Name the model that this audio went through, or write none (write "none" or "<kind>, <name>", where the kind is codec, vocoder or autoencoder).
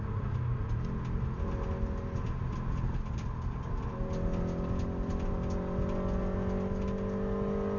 none